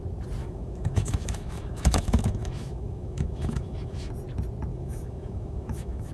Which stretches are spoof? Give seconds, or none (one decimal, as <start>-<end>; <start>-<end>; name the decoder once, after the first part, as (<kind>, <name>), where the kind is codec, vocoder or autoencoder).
0.4-4.1 (autoencoder, DAC-VAE); 4.7-6.1